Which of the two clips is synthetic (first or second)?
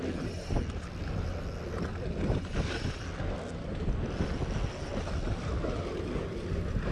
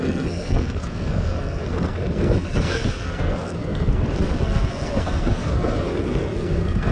second